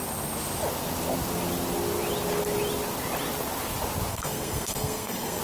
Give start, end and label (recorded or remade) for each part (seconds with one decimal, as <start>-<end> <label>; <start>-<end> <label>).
0.0-4.1 recorded; 4.1-5.4 remade